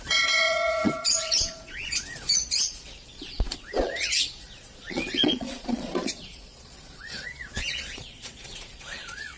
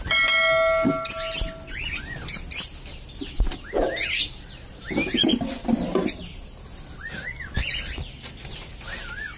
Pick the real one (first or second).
second